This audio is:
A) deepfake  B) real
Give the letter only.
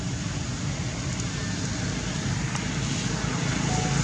B